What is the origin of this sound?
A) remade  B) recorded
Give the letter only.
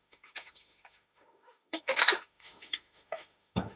A